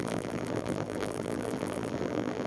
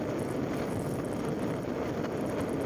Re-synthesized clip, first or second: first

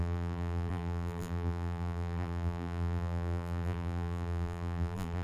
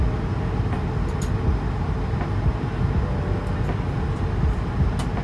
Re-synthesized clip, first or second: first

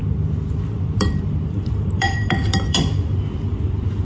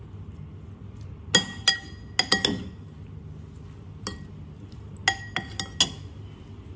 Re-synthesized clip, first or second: first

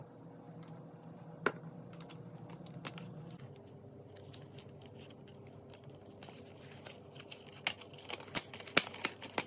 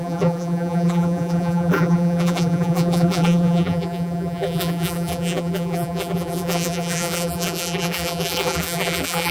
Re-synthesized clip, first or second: second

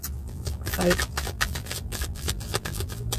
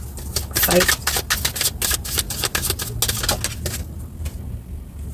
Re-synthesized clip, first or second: first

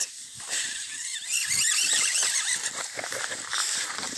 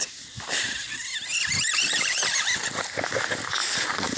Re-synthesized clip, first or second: first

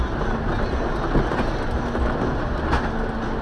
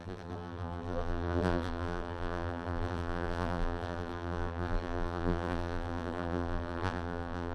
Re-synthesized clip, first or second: second